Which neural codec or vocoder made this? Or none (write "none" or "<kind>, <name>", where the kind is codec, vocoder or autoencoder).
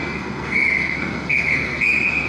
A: codec, SNAC